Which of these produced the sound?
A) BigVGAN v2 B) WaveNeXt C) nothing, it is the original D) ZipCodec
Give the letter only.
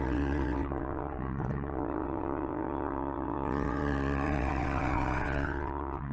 B